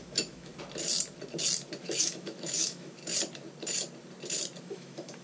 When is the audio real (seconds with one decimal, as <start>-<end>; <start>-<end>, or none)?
0.5-1.8; 3.0-4.6